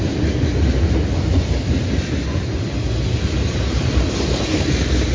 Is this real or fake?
real